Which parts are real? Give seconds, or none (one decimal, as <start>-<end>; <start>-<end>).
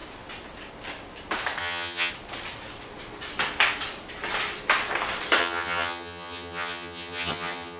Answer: 0.0-1.6; 2.1-5.4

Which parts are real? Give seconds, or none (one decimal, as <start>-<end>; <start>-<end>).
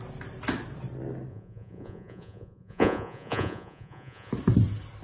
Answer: 0.0-1.3; 4.3-5.0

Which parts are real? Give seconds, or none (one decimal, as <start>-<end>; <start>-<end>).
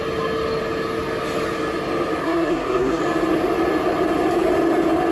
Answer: 0.0-2.2; 3.0-5.1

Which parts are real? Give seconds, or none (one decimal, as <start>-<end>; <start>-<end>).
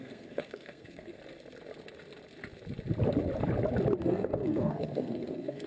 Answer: 1.2-4.0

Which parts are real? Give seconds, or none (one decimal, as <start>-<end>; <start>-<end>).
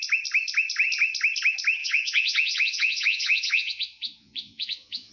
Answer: 0.0-1.8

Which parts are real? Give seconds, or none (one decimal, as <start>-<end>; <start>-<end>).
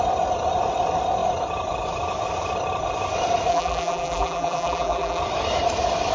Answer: 0.0-3.5; 5.2-6.1